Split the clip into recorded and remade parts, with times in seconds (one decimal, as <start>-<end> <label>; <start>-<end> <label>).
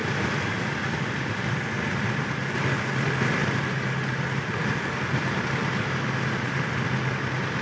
0.0-7.6 recorded